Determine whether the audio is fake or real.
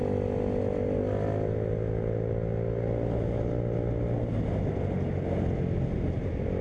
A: real